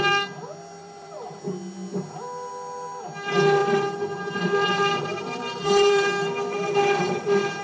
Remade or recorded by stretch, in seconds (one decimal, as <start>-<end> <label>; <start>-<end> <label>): 0.0-0.8 recorded; 0.8-1.4 remade; 1.4-3.6 recorded; 3.6-7.6 remade